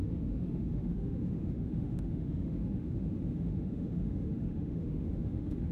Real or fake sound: fake